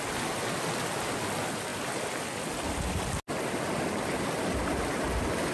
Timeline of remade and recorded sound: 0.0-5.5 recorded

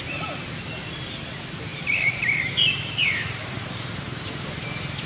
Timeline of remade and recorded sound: 0.0-1.7 recorded; 1.7-5.1 remade

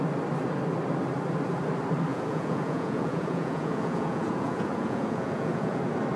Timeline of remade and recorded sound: 0.0-2.1 recorded; 2.1-5.8 remade; 5.8-6.2 recorded

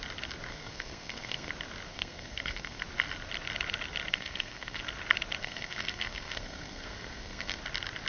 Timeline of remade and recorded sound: 0.0-0.5 recorded; 0.5-1.5 remade; 1.5-1.9 recorded; 1.9-2.8 remade; 2.8-4.1 recorded; 4.1-4.8 remade; 4.8-5.4 recorded; 5.4-7.6 remade; 7.6-8.1 recorded

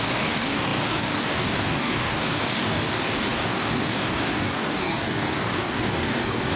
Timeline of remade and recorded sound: 0.0-6.6 remade

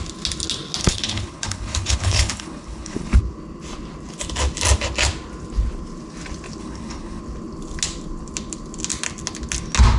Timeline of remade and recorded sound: 0.0-0.8 recorded; 0.8-3.2 remade; 3.2-6.6 recorded; 6.6-7.2 remade; 7.2-10.0 recorded